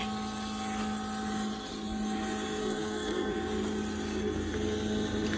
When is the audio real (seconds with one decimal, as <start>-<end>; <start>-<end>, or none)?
0.0-2.6; 3.3-5.4